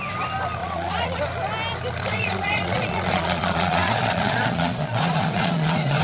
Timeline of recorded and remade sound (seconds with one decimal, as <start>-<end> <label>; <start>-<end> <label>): 0.0-0.6 recorded; 0.6-1.2 remade; 1.2-2.1 recorded; 2.1-6.0 remade